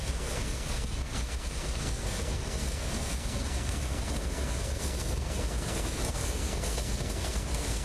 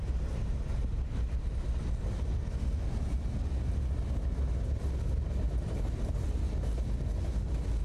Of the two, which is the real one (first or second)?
second